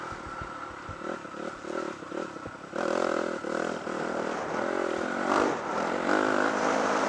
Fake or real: real